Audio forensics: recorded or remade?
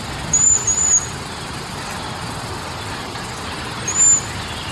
recorded